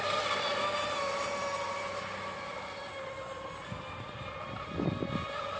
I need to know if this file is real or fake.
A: real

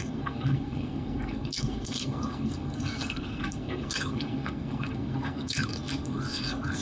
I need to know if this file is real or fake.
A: fake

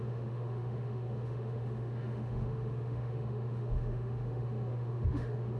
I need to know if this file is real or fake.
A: fake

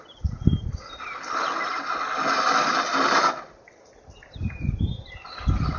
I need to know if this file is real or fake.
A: real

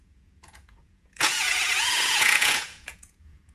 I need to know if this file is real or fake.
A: fake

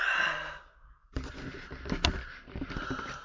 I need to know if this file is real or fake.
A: real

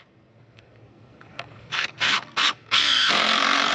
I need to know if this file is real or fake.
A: fake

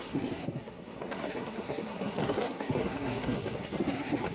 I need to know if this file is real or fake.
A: fake